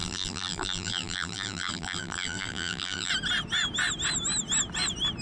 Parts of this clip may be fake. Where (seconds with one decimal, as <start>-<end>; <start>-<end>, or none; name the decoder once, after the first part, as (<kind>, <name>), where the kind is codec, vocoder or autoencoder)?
0.0-3.1 (vocoder, BigVGAN v2)